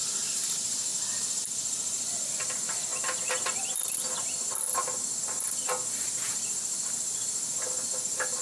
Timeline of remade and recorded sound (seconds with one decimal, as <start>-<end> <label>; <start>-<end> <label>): 0.0-8.4 recorded

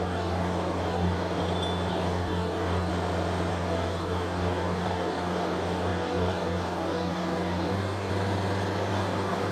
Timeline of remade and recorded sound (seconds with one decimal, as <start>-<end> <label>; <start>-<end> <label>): 0.0-1.4 remade; 1.4-1.9 recorded; 1.9-2.9 remade; 2.9-3.5 recorded; 3.5-8.1 remade; 8.1-8.9 recorded; 8.9-9.5 remade

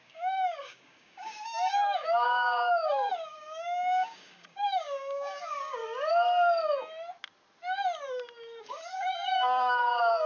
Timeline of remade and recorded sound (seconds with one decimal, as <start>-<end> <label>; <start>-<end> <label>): 0.0-5.8 remade; 5.8-8.6 recorded; 8.6-10.3 remade

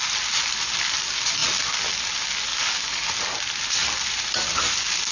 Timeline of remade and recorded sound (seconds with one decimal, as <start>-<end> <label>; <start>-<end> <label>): 0.0-2.5 recorded; 2.5-3.1 remade; 3.1-5.1 recorded

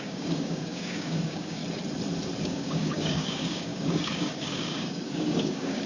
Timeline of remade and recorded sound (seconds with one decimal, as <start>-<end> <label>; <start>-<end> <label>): 0.0-1.6 remade; 1.6-2.4 recorded; 2.4-5.9 remade

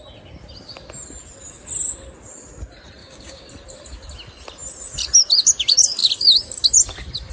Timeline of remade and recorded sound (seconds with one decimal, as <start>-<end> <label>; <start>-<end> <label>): 0.0-3.0 recorded; 3.0-3.5 remade; 3.5-7.3 recorded

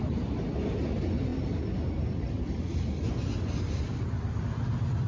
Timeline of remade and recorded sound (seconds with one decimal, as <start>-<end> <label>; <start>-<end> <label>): 0.0-5.1 recorded

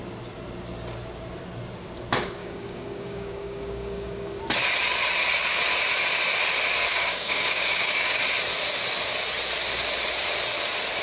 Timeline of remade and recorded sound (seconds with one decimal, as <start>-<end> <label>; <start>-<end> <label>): 0.0-2.4 recorded; 2.4-4.4 remade; 4.4-6.9 recorded; 6.9-8.2 remade; 8.2-11.0 recorded